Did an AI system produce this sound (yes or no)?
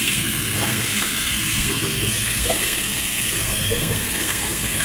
yes